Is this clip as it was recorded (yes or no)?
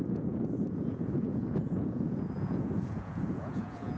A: no